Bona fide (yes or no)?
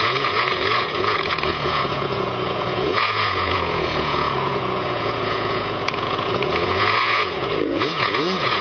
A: no